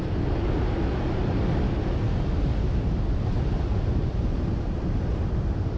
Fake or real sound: real